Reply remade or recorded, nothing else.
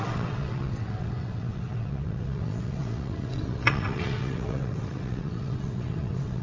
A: remade